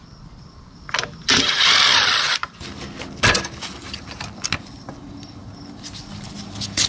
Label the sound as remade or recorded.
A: recorded